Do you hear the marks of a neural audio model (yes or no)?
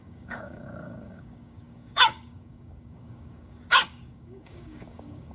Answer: yes